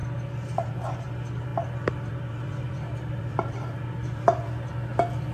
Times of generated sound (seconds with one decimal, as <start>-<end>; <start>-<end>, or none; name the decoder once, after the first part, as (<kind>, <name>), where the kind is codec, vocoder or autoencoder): 1.5-4.7 (vocoder, BigVGAN v2)

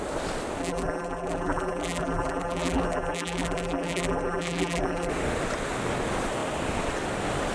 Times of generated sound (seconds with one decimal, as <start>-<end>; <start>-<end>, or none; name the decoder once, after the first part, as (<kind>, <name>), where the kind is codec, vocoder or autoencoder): 0.6-5.1 (vocoder, BigVGAN v2)